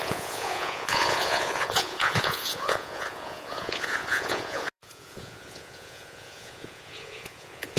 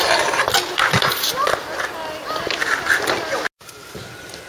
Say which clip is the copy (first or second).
first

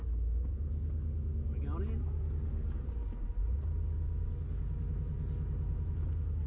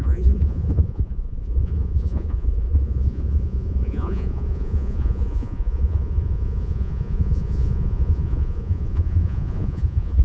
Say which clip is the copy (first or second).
second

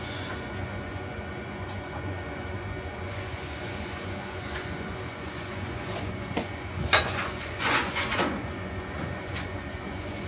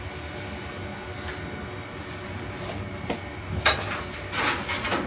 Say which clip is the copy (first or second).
first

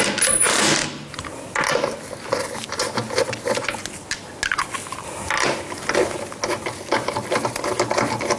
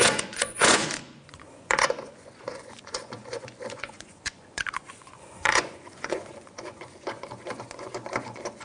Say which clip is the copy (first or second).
second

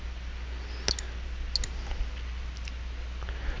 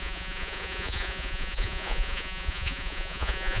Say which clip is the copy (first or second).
second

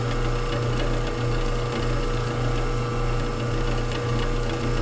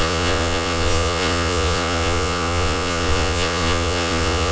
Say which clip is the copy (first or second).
second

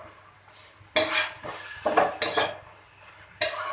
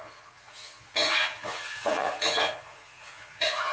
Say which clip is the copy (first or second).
second